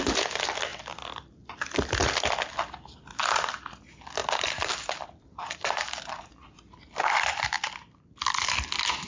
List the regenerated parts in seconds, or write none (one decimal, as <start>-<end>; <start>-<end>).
0.7-2.1; 4.2-7.6

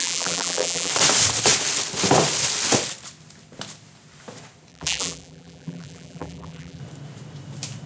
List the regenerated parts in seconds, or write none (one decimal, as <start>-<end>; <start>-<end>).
0.0-0.9; 4.7-6.8

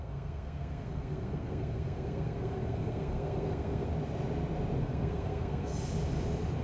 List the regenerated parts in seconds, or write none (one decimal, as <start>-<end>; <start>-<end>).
0.0-3.9; 4.8-5.7

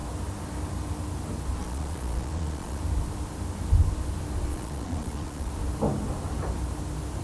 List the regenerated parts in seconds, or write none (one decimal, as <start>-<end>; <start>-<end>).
1.6-2.8; 4.5-5.5

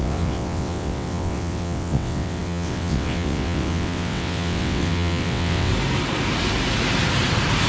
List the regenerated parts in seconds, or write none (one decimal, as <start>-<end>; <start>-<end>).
0.0-5.7